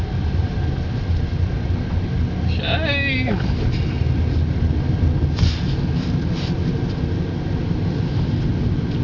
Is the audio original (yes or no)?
yes